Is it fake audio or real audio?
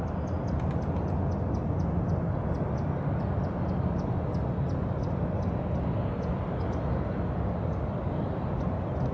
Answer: real